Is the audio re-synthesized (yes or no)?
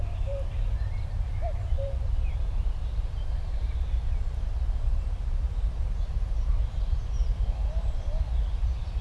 yes